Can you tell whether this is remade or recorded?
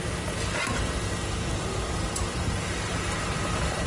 recorded